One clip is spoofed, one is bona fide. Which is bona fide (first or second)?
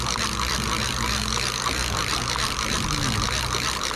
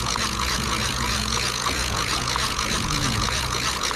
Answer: first